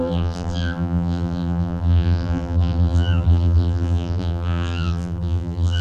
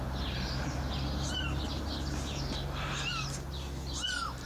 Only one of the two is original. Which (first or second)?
second